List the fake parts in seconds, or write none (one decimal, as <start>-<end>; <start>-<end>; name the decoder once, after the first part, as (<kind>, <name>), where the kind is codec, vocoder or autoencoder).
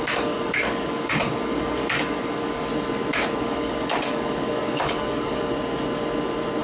0.0-2.7 (codec, DAC); 3.4-5.5